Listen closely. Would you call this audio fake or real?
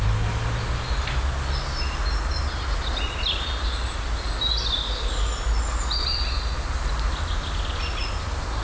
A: real